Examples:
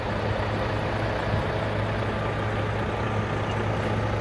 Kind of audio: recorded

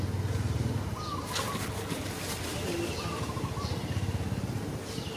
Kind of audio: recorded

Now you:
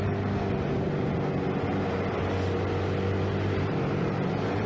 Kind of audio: recorded